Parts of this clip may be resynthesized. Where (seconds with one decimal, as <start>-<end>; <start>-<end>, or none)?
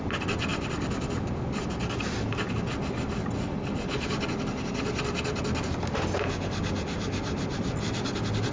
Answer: none